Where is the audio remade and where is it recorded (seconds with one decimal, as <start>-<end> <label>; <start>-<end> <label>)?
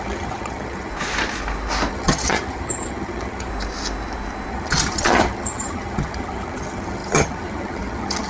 0.0-0.9 remade; 0.9-1.9 recorded; 1.9-3.5 remade; 3.5-4.5 recorded; 4.5-8.3 remade